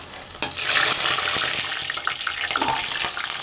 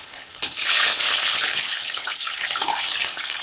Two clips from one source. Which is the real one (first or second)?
first